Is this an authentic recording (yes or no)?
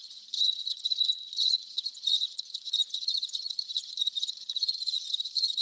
no